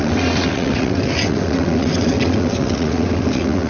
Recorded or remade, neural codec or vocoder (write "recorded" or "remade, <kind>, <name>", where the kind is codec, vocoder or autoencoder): remade, vocoder, WaveNeXt